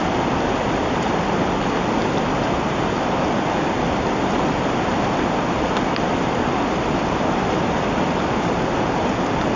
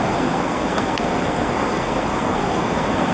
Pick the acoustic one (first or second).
first